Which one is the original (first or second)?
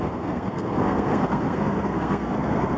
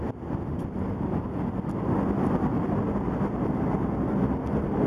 second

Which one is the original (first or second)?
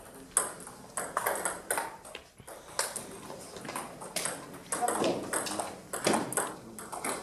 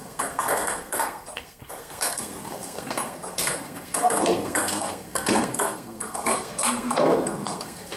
first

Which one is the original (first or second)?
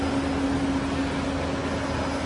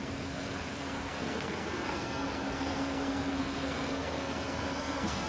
first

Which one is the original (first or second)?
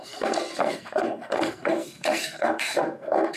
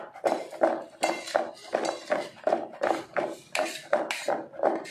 second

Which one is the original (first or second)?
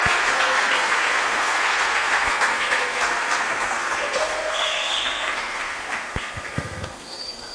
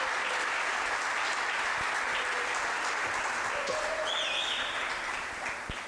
second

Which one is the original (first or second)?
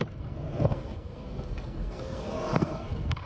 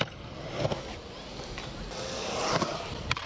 second